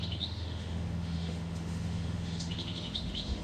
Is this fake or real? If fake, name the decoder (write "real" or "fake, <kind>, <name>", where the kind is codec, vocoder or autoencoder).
fake, autoencoder, DAC-VAE